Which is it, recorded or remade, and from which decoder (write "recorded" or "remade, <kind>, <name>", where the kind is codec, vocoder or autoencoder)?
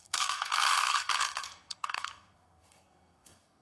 remade, codec, SNAC